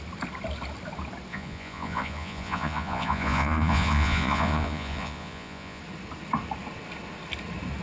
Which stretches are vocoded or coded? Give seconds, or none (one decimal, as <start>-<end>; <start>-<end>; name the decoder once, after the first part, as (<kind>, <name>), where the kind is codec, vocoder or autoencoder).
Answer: 1.3-5.8 (vocoder, Vocos)

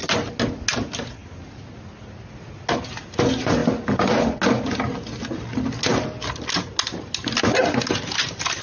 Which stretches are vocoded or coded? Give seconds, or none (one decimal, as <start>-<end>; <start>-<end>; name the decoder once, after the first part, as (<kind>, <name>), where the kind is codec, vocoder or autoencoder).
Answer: none

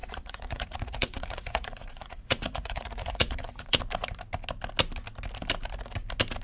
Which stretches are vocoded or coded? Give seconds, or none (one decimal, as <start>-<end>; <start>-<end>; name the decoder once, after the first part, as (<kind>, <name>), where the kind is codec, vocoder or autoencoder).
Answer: 0.0-3.8 (vocoder, Vocos)

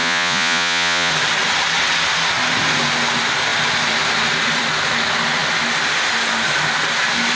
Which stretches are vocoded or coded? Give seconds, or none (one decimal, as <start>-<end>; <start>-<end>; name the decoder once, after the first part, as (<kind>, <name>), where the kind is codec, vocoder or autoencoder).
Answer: 0.0-1.1 (vocoder, Vocos)

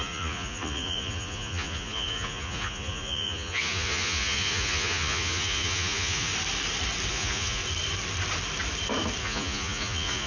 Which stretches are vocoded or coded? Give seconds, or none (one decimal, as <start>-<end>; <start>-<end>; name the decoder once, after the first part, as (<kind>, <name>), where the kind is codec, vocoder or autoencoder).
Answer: 0.0-6.3 (vocoder, Vocos); 7.1-7.6; 9.2-10.3

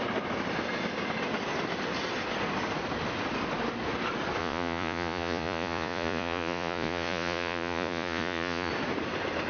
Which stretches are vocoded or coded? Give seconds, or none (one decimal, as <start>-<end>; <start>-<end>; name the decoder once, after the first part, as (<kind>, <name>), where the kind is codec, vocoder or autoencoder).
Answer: 4.4-8.7 (vocoder, Vocos)

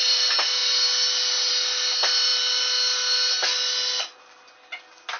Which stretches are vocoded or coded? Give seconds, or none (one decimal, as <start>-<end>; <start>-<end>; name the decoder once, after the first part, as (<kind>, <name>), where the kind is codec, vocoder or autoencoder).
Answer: none